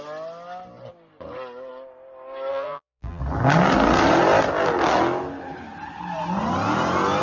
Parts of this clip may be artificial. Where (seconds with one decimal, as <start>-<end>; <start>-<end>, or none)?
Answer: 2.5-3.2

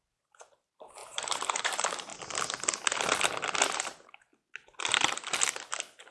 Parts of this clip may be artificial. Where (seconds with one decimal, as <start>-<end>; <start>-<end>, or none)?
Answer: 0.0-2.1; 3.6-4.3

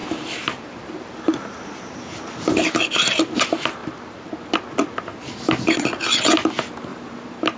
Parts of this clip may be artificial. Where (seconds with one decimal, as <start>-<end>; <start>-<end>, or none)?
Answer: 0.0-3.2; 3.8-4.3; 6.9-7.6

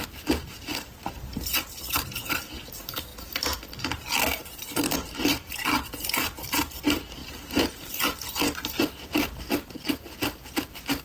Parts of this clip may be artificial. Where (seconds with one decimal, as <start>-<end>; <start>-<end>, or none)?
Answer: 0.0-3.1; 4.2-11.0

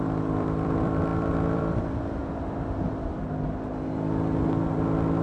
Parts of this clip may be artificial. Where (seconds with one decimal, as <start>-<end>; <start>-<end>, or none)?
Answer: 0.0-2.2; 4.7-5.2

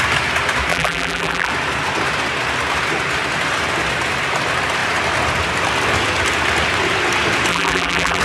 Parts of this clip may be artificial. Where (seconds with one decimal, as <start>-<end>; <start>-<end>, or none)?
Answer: 0.7-1.5; 7.5-8.2